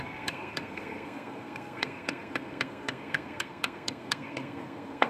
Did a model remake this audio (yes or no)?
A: yes